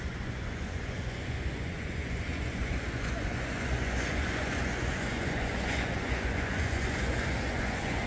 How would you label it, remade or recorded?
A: remade